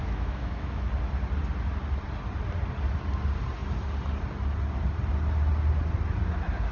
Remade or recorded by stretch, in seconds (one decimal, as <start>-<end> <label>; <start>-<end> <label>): 0.0-0.9 remade; 0.9-6.7 recorded